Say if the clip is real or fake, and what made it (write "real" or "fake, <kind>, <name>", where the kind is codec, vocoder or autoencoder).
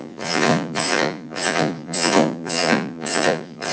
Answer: fake, vocoder, Vocos